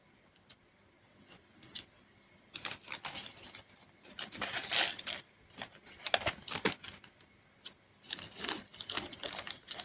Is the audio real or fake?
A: real